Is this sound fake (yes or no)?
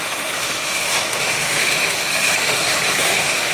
yes